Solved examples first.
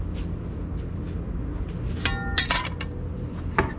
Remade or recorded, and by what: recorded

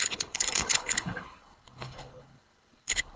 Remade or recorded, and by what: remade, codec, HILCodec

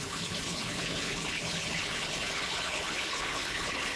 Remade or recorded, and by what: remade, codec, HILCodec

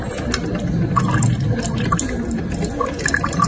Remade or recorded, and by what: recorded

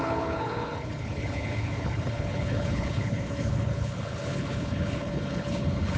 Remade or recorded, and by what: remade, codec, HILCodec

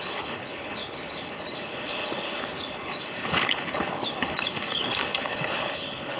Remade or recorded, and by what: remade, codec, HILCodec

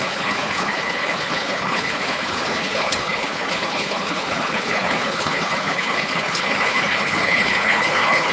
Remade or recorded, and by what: remade, codec, HILCodec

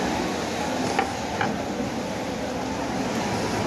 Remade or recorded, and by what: recorded